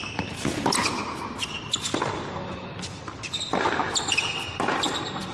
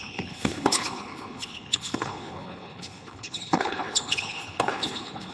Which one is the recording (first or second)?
first